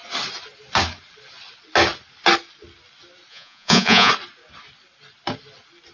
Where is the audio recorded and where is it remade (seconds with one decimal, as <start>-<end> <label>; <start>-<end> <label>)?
0.0-3.3 recorded; 3.3-4.1 remade; 4.1-5.9 recorded